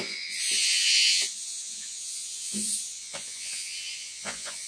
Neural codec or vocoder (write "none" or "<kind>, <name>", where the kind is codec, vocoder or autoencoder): vocoder, Vocos